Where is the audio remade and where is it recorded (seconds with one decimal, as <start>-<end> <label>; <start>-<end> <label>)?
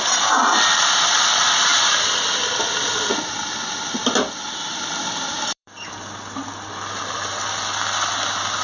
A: 0.0-8.6 remade